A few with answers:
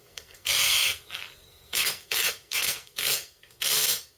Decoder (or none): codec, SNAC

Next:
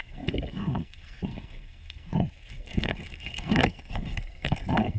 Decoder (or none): codec, SNAC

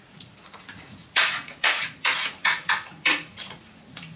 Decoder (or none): vocoder, Vocos